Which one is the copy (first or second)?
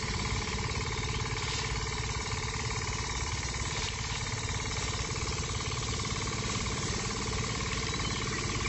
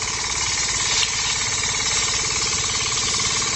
first